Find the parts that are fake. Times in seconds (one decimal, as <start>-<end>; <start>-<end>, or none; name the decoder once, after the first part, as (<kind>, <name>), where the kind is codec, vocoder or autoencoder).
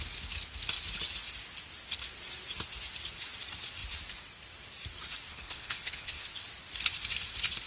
5.3-6.3 (codec, HILCodec)